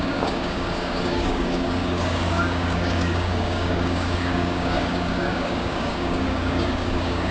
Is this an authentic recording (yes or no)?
no